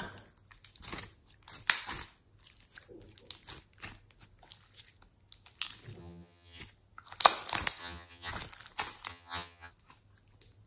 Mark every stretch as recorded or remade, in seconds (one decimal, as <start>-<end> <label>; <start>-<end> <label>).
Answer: 0.0-6.0 recorded; 6.0-6.6 remade; 6.6-7.8 recorded; 7.8-8.3 remade; 8.3-9.1 recorded; 9.1-9.7 remade; 9.7-10.7 recorded